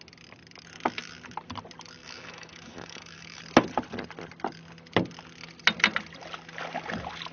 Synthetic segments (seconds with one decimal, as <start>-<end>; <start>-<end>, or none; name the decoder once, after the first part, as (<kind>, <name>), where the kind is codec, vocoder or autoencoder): 2.0-3.4 (autoencoder, DAC-VAE)